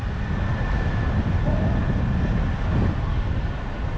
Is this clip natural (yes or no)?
yes